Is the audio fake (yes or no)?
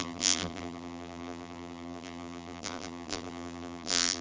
yes